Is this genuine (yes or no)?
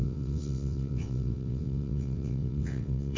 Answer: no